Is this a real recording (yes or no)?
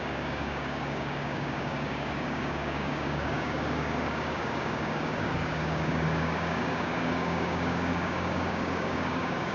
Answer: no